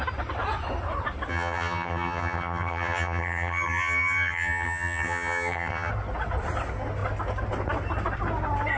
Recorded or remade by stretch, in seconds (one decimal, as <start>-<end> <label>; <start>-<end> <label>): 0.0-1.3 recorded; 1.3-5.9 remade; 5.9-8.8 recorded